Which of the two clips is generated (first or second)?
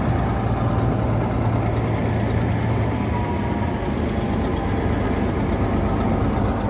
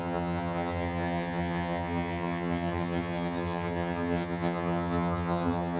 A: second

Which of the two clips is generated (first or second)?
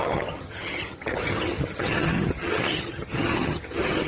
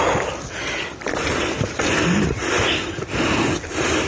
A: first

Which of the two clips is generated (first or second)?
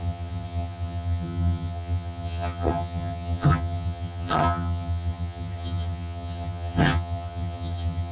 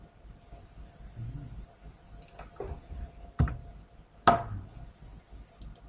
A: first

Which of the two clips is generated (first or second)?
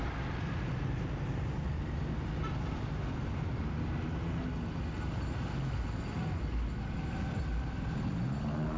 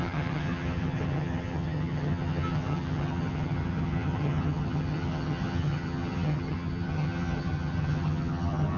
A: second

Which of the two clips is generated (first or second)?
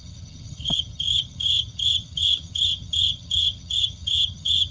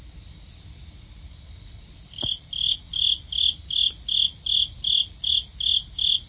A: first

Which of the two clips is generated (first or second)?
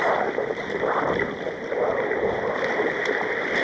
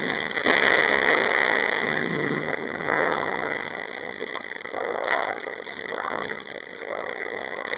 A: second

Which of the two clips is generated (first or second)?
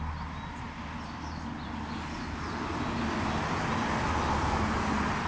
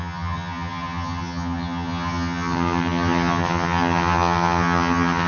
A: second